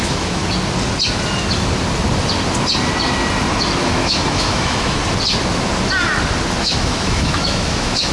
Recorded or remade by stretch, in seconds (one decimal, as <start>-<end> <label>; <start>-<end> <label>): 0.0-0.4 remade; 0.4-3.8 recorded; 3.8-5.0 remade; 5.0-6.6 recorded; 6.6-8.1 remade